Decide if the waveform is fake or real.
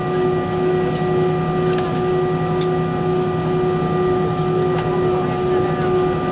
real